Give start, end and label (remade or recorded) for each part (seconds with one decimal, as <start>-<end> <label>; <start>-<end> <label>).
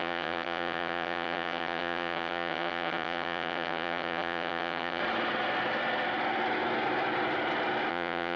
0.0-5.0 remade; 5.0-7.9 recorded; 7.9-8.4 remade